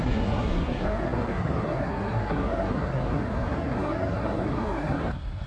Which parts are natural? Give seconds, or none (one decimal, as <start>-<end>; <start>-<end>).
none